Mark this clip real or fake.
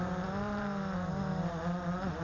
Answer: real